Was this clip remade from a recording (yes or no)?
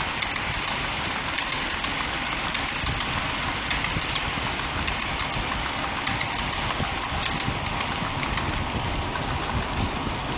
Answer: no